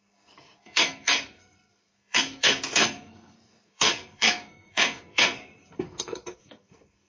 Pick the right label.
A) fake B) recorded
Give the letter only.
A